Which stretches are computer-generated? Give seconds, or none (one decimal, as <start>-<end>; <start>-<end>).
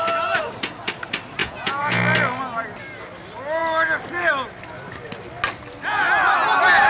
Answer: 1.4-2.0